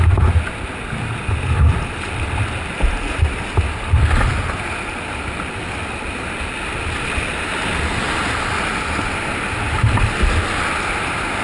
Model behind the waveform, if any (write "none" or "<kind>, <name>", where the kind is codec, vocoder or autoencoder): none